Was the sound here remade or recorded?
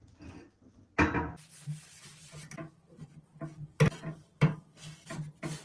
recorded